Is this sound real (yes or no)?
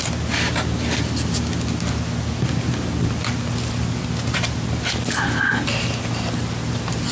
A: yes